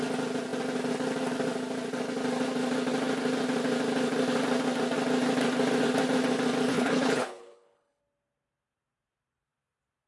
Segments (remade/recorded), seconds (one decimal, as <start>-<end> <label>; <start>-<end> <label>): 0.0-6.7 recorded; 6.7-8.0 remade; 8.0-10.1 recorded

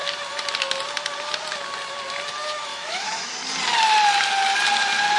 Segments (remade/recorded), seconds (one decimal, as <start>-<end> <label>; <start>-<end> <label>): 0.0-2.7 recorded; 2.7-3.3 remade; 3.3-5.2 recorded

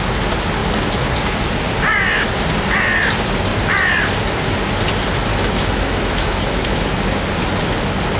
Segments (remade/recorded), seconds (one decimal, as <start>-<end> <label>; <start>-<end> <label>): 0.0-5.3 recorded; 5.3-6.9 remade; 6.9-8.2 recorded

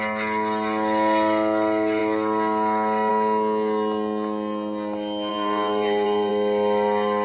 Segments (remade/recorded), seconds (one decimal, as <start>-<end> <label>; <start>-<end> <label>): 0.0-5.3 recorded; 5.3-6.3 remade; 6.3-7.2 recorded

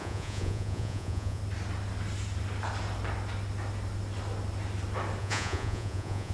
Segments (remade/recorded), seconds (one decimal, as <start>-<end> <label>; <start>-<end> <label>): 0.0-1.4 remade; 1.4-5.2 recorded; 5.2-6.3 remade

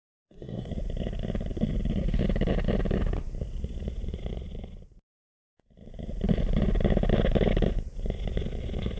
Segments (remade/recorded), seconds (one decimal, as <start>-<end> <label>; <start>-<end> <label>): 0.0-0.7 remade; 0.7-9.0 recorded

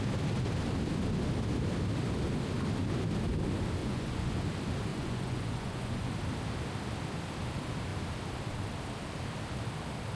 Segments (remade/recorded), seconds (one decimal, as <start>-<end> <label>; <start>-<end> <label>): 0.0-3.8 recorded; 3.8-4.3 remade; 4.3-4.9 recorded; 4.9-6.1 remade; 6.1-10.2 recorded

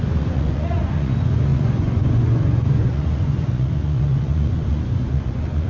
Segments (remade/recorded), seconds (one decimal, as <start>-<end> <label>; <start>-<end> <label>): 0.0-5.7 remade